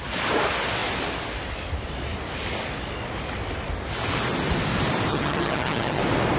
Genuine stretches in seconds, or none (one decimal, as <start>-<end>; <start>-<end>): 0.0-5.1; 6.0-6.4